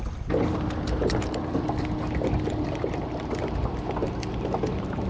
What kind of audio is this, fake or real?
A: real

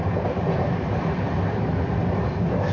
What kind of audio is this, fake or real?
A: real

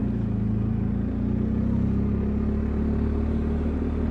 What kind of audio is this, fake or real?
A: real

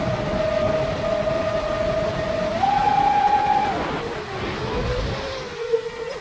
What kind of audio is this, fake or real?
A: real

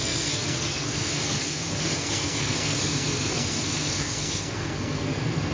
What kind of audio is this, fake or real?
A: fake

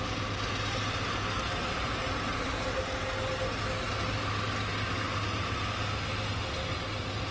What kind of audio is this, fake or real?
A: real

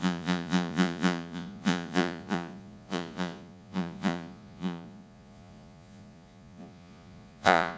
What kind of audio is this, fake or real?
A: fake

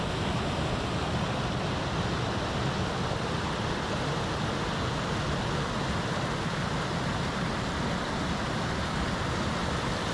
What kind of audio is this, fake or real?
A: real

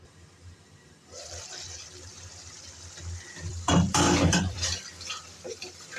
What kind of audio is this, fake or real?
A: fake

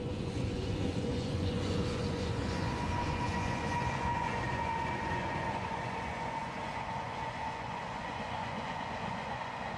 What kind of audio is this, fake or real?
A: fake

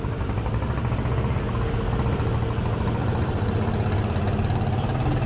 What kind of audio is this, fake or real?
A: real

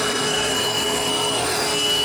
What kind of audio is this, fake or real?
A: fake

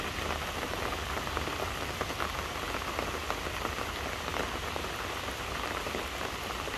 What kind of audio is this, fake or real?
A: real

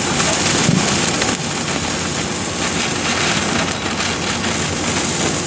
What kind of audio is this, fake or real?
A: real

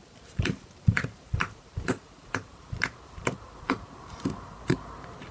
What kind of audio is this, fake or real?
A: fake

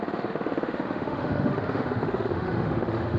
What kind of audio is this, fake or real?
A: fake